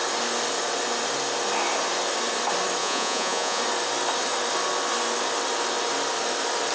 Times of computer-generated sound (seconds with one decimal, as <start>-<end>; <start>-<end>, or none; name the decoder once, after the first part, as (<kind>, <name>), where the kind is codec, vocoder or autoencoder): 2.8-3.6 (vocoder, Vocos)